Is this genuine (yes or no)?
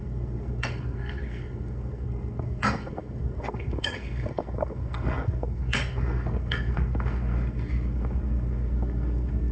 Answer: no